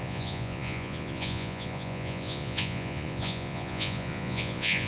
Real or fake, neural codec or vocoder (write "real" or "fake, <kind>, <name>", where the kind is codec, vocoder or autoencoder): fake, vocoder, Vocos